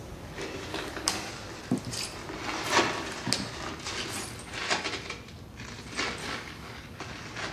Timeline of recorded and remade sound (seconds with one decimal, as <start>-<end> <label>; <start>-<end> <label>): 0.0-0.7 recorded; 0.7-1.3 remade; 1.3-6.2 recorded; 6.2-7.0 remade; 7.0-7.5 recorded